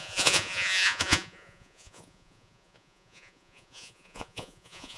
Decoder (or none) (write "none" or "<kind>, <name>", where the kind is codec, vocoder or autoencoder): vocoder, Vocos